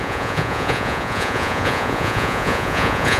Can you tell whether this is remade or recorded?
remade